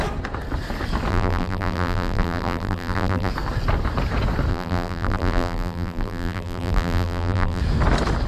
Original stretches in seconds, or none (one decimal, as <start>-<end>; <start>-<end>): 0.0-1.1; 3.3-4.5; 7.6-8.3